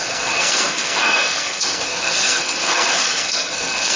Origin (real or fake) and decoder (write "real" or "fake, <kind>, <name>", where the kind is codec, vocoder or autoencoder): fake, codec, SNAC